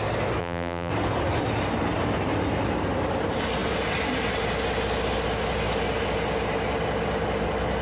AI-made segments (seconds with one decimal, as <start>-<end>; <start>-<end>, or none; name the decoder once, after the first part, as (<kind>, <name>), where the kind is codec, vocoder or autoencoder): 0.4-0.9 (vocoder, BigVGAN v2)